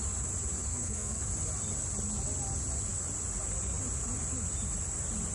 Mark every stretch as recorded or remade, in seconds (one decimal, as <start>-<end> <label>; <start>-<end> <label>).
0.0-0.7 recorded; 0.7-1.2 remade; 1.2-5.3 recorded